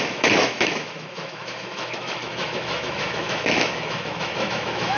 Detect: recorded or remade remade